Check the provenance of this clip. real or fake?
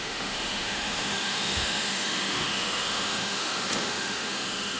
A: fake